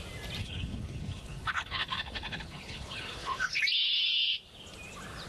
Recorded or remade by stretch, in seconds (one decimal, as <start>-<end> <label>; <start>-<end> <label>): 0.0-0.4 recorded; 0.4-3.6 remade; 3.6-5.3 recorded